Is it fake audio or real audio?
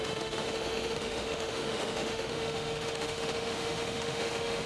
fake